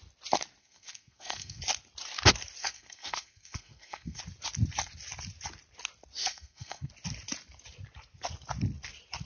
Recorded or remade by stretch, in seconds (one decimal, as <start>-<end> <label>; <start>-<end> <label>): 0.0-0.6 recorded; 0.6-1.6 remade; 1.6-2.6 recorded; 2.6-4.2 remade; 4.2-6.2 recorded; 6.2-6.9 remade; 6.9-9.2 recorded